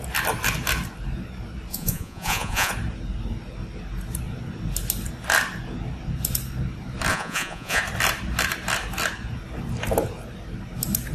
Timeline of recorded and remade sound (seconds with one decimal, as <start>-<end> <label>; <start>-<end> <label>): 0.0-1.7 recorded; 1.7-2.7 remade; 2.7-7.1 recorded; 7.1-7.8 remade; 7.8-11.1 recorded